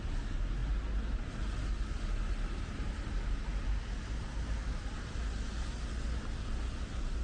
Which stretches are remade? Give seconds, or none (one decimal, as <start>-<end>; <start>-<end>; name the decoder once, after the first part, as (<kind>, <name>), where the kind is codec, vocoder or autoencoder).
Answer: none